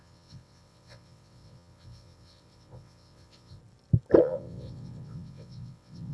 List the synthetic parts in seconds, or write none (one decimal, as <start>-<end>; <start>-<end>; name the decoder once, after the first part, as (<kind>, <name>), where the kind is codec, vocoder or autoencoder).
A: 0.0-3.6 (vocoder, WaveNeXt); 4.2-6.1